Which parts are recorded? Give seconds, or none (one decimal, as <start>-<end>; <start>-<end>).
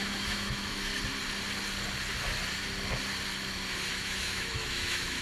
0.9-3.9